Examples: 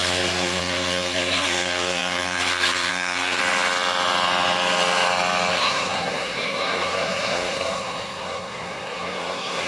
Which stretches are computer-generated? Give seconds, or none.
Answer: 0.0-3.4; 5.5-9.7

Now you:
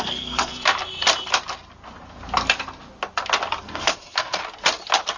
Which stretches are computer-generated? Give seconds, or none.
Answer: 0.0-0.5; 3.6-4.4

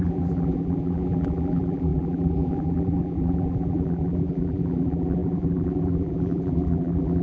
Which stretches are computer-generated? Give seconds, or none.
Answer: 0.0-7.2

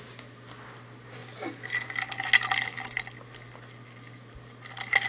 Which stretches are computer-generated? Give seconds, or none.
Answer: none

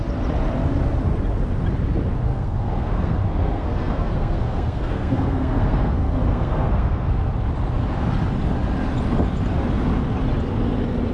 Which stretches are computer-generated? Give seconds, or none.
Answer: 2.3-7.3

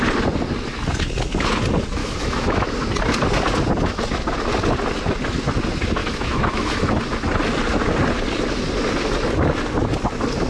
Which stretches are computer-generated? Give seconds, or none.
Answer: 2.0-2.6; 6.0-7.0

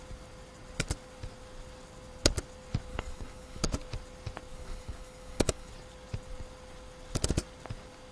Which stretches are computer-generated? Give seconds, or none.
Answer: 2.9-3.6; 4.5-5.7

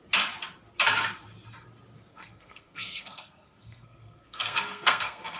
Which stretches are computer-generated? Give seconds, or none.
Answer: 2.1-5.4